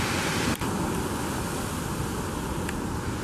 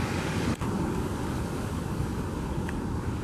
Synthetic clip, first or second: second